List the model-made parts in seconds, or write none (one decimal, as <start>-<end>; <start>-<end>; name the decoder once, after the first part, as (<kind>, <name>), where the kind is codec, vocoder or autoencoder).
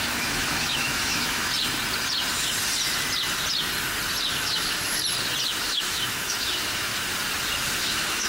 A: 0.0-1.5 (autoencoder, DAC-VAE); 4.3-5.0; 5.6-6.9; 7.8-8.3